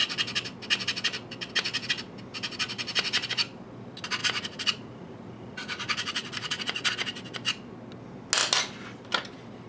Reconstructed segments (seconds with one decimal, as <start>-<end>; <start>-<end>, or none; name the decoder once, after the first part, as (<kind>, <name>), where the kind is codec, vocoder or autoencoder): 4.2-6.9 (vocoder, Vocos)